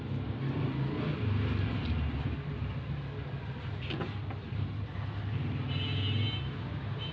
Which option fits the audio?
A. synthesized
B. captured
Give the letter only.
B